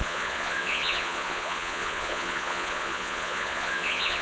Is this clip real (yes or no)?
no